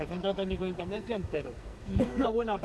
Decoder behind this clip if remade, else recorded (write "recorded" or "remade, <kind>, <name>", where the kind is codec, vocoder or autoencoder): remade, codec, SNAC